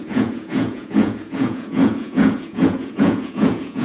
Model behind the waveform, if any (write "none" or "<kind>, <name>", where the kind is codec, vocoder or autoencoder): vocoder, Vocos